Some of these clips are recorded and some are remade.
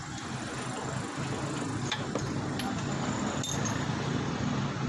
recorded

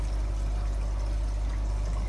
recorded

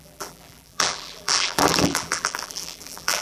remade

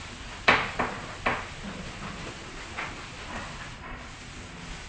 recorded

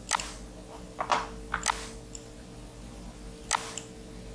recorded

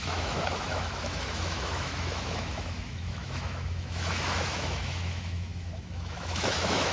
remade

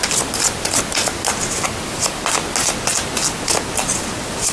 recorded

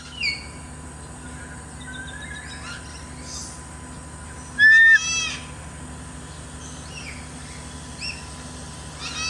recorded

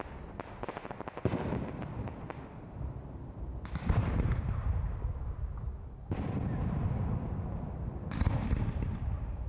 recorded